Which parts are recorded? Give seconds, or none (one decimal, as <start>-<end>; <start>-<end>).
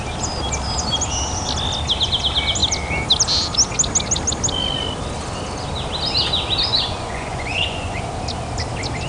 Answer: 0.0-6.7; 8.0-9.1